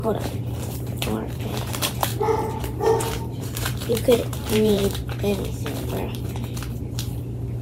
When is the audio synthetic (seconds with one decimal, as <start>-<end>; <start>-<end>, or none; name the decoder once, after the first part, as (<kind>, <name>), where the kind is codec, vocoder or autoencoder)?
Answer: 0.0-2.1 (vocoder, BigVGAN v2); 3.0-4.8